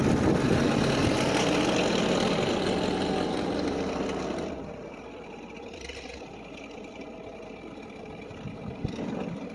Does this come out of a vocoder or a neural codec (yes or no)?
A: no